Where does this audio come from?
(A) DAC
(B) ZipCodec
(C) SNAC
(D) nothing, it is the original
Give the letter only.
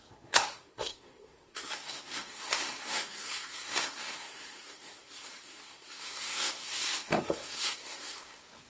C